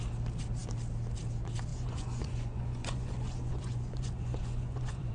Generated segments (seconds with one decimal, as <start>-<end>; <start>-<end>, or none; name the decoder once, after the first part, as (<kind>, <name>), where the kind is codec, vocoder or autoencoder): 1.7-5.1 (vocoder, Vocos)